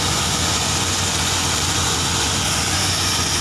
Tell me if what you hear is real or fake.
fake